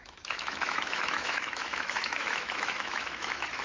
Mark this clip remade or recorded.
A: remade